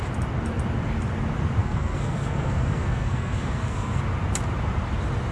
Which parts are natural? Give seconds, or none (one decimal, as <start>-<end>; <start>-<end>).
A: 0.0-1.6; 4.0-5.3

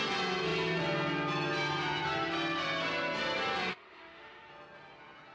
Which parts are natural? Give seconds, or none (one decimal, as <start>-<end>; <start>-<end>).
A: 0.0-3.7; 4.5-5.3